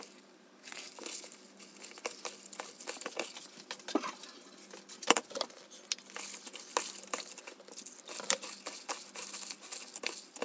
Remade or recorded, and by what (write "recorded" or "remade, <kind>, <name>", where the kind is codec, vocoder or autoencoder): recorded